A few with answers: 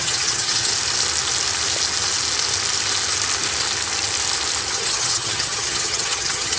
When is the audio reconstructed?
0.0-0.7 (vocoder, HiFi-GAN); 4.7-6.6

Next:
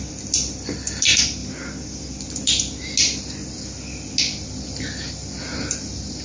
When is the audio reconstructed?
none

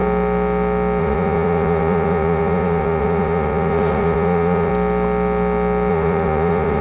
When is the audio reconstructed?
1.0-4.7 (vocoder, Vocos); 5.9-6.8

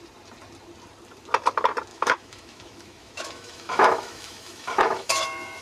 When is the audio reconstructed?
1.9-5.6 (autoencoder, DAC-VAE)

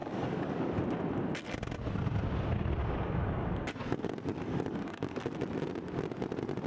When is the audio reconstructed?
0.0-0.8 (codec, DAC); 2.8-5.2

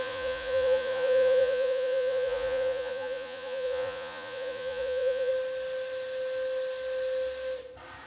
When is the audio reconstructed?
0.0-5.3 (vocoder, Vocos)

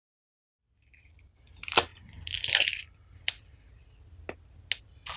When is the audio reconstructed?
none

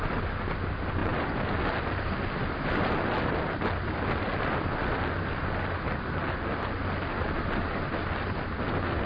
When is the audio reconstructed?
1.0-3.4 (vocoder, BigVGAN v2)